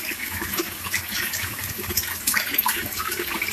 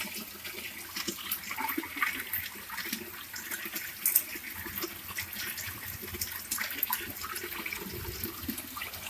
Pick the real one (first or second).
second